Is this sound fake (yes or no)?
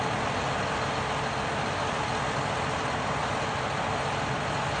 no